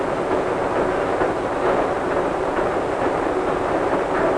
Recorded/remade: recorded